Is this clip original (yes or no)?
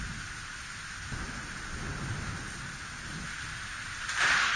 yes